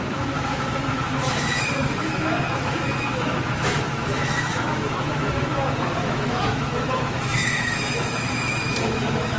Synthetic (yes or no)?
yes